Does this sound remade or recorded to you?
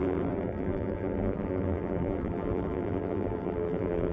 remade